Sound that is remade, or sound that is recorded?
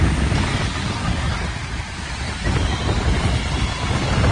recorded